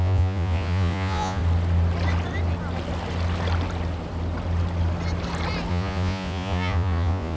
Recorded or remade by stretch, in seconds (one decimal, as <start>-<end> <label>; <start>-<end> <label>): 0.0-1.4 remade; 1.4-5.7 recorded; 5.7-7.4 remade